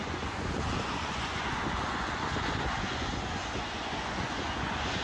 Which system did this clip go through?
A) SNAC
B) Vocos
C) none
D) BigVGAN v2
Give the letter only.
B